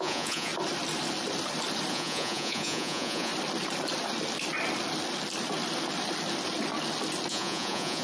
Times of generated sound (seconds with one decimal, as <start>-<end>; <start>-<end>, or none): 0.0-0.5; 1.9-3.3; 7.3-8.0